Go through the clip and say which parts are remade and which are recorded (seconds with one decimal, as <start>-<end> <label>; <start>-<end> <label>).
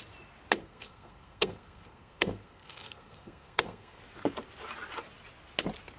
0.0-0.6 recorded; 0.6-4.0 remade; 4.0-6.0 recorded